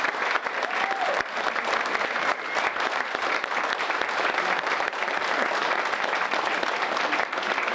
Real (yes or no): yes